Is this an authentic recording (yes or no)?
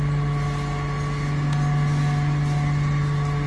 yes